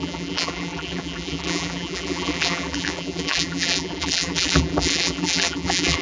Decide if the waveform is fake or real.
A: fake